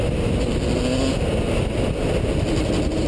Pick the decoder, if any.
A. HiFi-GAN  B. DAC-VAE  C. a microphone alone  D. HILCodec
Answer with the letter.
C